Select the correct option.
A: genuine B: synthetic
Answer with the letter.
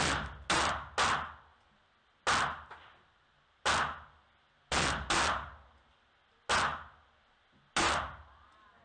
A